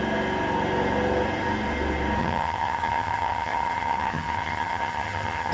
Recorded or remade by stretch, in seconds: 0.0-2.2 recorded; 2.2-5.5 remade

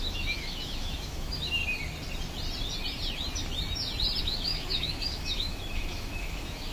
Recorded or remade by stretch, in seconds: 0.0-1.6 remade; 1.6-4.2 recorded; 4.2-6.7 remade

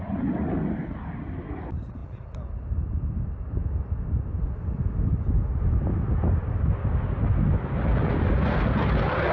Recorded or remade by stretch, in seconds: 0.0-9.3 recorded

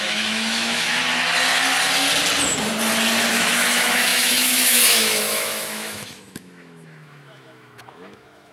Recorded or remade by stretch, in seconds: 0.0-1.0 remade; 1.0-3.3 recorded; 3.3-8.5 remade

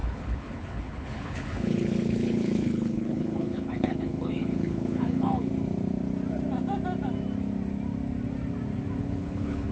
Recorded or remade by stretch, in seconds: 0.0-5.5 remade; 5.5-9.0 recorded; 9.0-9.7 remade

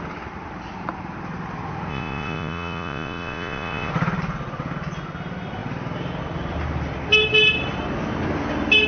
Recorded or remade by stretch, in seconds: 0.0-1.9 recorded; 1.9-3.9 remade; 3.9-8.9 recorded

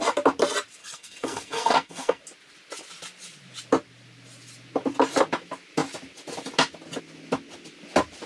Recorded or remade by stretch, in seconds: 0.0-0.8 recorded; 0.8-2.2 remade; 2.2-8.3 recorded